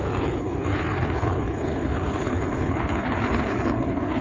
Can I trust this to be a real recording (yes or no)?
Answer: no